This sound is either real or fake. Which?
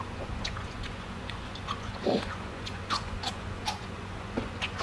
fake